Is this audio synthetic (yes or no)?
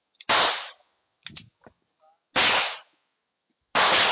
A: no